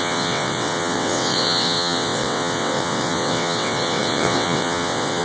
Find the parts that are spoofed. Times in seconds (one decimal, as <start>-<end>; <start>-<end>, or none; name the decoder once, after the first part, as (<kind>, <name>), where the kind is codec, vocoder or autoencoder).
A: 0.0-5.2 (vocoder, WaveNeXt)